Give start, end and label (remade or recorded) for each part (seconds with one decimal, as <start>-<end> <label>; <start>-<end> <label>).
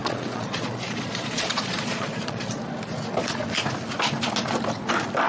0.0-2.5 remade; 2.5-5.3 recorded